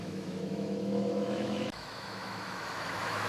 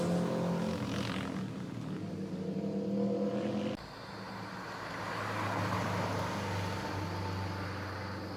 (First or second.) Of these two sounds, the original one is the second